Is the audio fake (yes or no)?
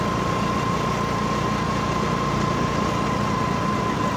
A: no